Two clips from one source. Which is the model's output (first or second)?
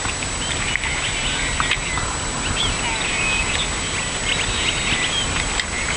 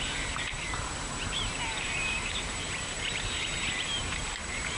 second